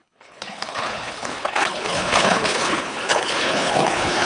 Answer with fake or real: fake